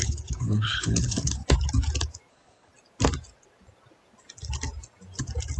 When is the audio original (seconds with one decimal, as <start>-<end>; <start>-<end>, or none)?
1.4-2.3; 2.7-5.6

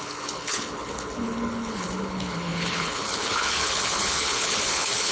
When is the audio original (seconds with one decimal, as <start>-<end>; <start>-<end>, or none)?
none

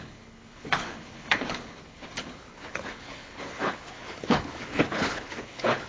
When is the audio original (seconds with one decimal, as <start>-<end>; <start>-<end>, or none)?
none